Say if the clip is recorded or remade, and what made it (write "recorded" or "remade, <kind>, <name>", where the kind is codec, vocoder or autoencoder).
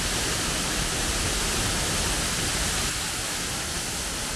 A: recorded